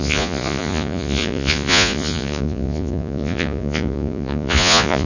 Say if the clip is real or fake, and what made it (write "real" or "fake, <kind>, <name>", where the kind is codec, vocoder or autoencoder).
fake, vocoder, Vocos